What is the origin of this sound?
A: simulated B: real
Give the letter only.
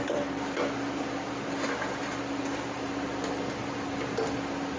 B